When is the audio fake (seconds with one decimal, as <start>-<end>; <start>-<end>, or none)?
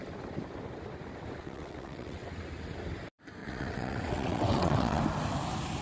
1.4-2.3; 3.4-5.0